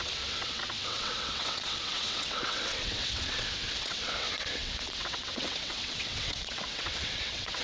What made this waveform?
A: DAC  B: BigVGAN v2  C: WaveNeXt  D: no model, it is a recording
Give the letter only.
C